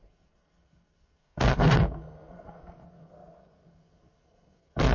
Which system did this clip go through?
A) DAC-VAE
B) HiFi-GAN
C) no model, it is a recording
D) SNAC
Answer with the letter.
D